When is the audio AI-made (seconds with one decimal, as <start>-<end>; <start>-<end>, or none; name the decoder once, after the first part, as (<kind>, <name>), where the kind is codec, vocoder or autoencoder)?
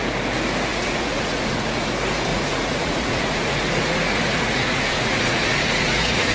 0.7-1.9 (vocoder, Vocos); 2.3-6.3